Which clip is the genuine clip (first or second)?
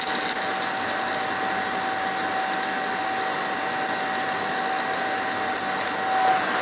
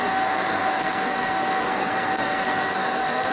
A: first